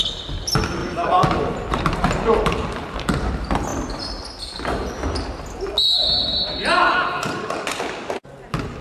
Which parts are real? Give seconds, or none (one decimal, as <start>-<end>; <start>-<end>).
0.0-0.8; 3.3-8.8